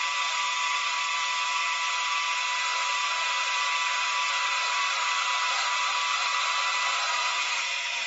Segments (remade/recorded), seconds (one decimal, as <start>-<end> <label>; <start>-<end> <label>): 0.0-7.2 recorded; 7.2-8.1 remade